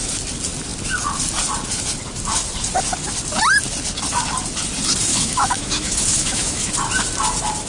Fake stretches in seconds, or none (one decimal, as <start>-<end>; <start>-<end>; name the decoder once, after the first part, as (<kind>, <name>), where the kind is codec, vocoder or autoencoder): 5.1-6.7 (autoencoder, DAC-VAE)